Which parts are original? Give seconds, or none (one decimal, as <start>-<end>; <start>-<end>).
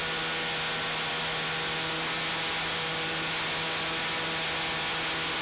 0.0-5.4